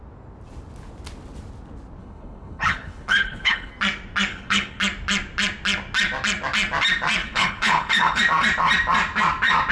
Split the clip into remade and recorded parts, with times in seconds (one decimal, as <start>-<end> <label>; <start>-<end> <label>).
0.0-2.0 recorded; 2.0-3.7 remade; 3.7-4.3 recorded; 4.3-4.8 remade; 4.8-7.2 recorded; 7.2-8.2 remade; 8.2-9.7 recorded